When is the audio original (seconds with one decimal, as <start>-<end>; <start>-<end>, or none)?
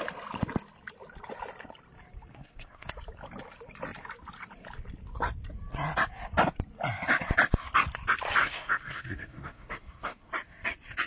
0.0-2.3; 2.9-8.4; 10.3-11.1